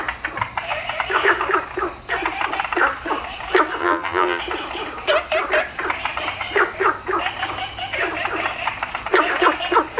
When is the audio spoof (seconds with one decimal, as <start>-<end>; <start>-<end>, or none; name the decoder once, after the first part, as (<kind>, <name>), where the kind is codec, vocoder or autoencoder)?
3.8-4.4 (vocoder, BigVGAN v2)